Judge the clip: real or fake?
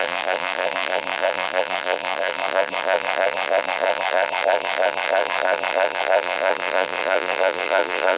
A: fake